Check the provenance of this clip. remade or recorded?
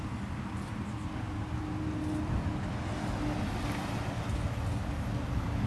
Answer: recorded